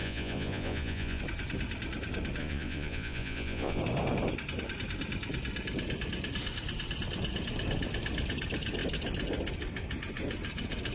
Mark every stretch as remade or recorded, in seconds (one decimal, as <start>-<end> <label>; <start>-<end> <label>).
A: 0.0-1.2 remade; 1.2-2.4 recorded; 2.4-3.8 remade; 3.8-10.9 recorded